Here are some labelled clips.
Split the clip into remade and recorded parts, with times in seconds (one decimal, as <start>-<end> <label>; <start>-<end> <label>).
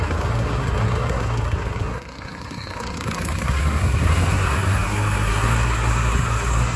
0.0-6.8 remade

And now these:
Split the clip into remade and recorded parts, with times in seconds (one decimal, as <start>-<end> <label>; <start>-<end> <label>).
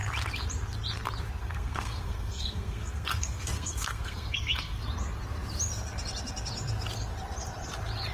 0.0-1.4 recorded; 1.4-4.8 remade; 4.8-8.1 recorded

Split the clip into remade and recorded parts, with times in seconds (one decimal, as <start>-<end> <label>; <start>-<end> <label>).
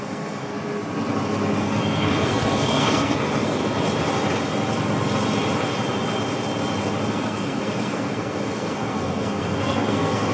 0.0-0.5 remade; 0.5-1.6 recorded; 1.6-3.6 remade; 3.6-7.1 recorded; 7.1-10.3 remade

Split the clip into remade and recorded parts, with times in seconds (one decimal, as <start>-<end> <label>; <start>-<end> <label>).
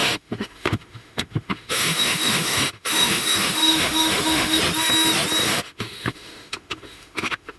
0.0-4.6 remade; 4.6-5.4 recorded; 5.4-7.6 remade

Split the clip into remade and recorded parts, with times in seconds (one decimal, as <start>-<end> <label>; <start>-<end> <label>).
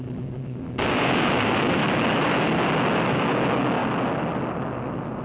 0.0-1.8 remade; 1.8-3.1 recorded; 3.1-3.8 remade; 3.8-5.2 recorded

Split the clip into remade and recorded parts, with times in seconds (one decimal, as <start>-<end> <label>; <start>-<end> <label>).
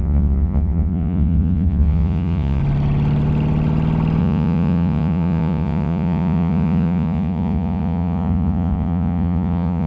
0.0-2.6 remade; 2.6-4.2 recorded; 4.2-9.9 remade